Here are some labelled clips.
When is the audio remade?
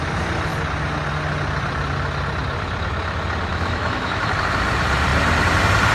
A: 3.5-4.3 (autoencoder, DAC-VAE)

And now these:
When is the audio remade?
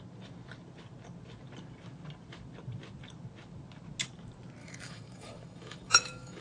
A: 4.6-6.4 (autoencoder, DAC-VAE)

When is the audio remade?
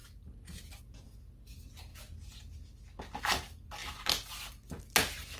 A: none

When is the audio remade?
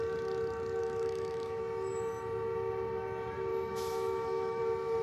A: 0.8-1.6 (autoencoder, DAC-VAE); 3.5-4.6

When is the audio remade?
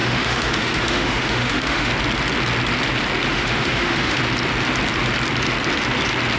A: 0.0-1.9 (autoencoder, DAC-VAE); 3.3-4.2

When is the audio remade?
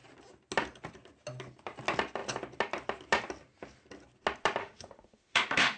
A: 4.6-5.8 (autoencoder, DAC-VAE)